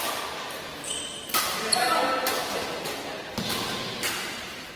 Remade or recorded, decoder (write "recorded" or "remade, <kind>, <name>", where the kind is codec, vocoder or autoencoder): recorded